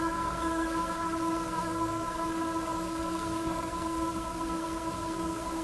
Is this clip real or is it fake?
fake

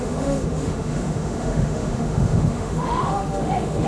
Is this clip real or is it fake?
fake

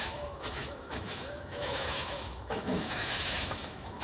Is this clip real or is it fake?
fake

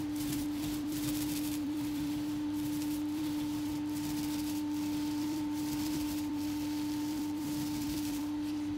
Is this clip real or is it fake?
fake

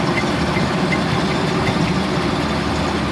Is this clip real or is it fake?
real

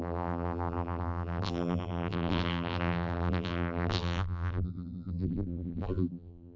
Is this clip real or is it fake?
fake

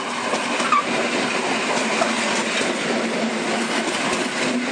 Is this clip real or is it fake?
real